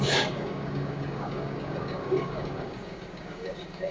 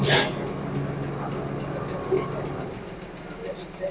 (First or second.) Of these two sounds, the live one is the second